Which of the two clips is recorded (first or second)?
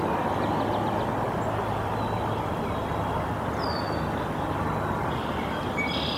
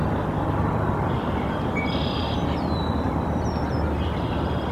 first